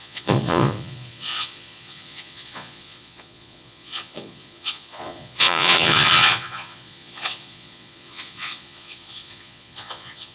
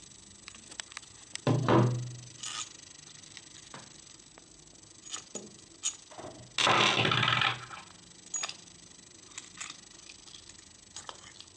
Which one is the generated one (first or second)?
first